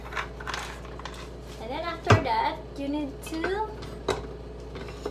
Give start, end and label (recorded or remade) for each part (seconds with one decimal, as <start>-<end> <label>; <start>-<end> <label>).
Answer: 0.0-5.1 recorded

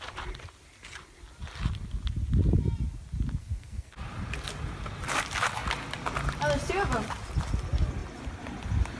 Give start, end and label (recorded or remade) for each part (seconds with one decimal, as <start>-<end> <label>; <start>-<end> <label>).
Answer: 0.0-3.4 recorded; 3.4-3.9 remade; 3.9-9.0 recorded

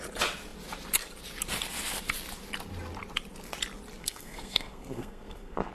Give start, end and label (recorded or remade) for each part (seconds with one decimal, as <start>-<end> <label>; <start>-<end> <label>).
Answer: 0.0-4.0 recorded; 4.0-5.7 remade